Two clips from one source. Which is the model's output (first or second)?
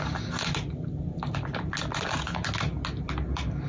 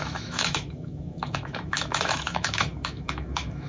second